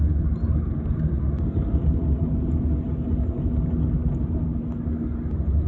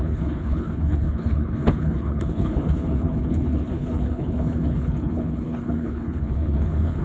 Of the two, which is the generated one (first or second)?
second